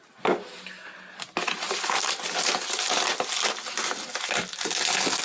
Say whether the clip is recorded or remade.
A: recorded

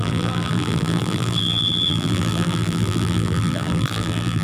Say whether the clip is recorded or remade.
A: remade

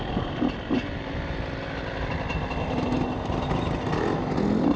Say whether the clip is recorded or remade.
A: recorded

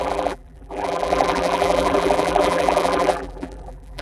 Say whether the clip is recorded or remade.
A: remade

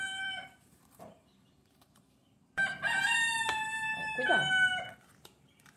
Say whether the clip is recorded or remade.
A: remade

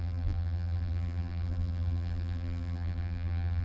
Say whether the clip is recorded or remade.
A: remade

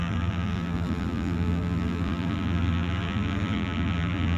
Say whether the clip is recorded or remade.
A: remade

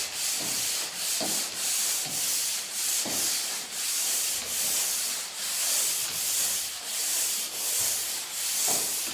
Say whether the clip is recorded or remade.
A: remade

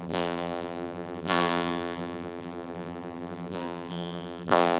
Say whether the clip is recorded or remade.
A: remade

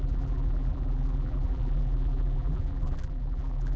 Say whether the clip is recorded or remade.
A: remade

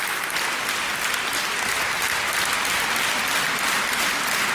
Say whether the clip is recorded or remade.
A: recorded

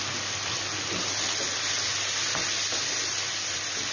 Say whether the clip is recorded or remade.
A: recorded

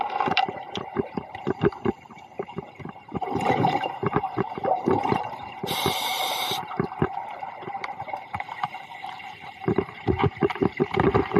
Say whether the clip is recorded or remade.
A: remade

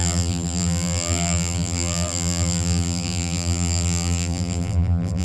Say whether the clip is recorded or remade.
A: remade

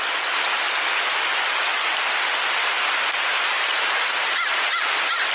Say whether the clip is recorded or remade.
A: remade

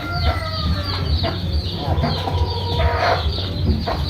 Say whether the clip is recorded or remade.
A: recorded